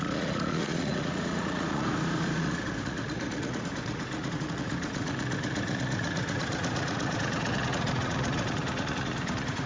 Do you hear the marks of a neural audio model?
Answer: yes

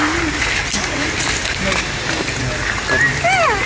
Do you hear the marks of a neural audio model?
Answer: no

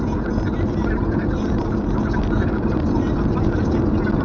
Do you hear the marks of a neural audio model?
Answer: no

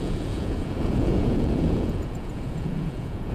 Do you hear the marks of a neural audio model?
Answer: yes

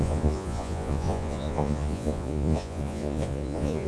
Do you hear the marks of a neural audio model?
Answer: yes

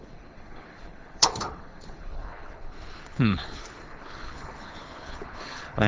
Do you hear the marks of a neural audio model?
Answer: yes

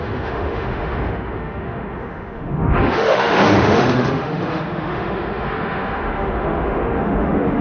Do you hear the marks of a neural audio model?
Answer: yes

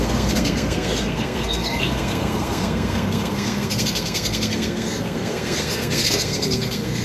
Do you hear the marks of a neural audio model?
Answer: yes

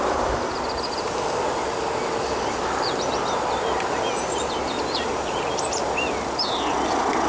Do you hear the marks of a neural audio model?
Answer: no